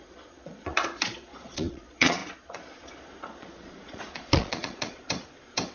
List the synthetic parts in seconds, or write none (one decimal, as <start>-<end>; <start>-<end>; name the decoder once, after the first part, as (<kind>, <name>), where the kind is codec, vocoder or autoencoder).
0.0-5.0 (vocoder, Vocos)